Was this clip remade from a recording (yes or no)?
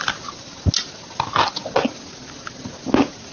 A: no